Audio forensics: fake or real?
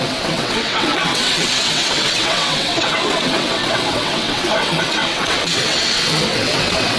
fake